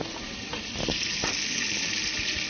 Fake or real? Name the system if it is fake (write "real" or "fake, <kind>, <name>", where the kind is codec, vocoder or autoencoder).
real